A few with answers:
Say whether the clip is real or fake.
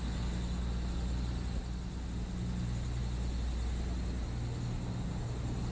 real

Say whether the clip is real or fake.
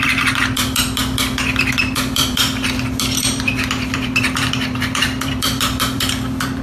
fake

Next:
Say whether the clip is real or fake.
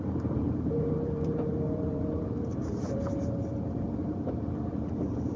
fake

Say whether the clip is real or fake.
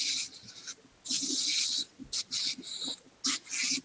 real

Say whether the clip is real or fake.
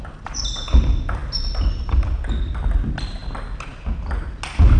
real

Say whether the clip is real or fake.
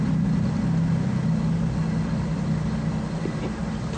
real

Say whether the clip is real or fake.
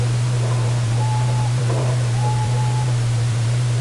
fake